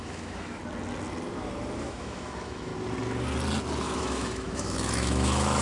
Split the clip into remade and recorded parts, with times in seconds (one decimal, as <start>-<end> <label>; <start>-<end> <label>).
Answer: 0.0-0.6 remade; 0.6-1.8 recorded; 1.8-2.7 remade; 2.7-3.8 recorded; 3.8-5.6 remade